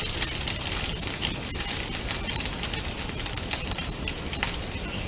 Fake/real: fake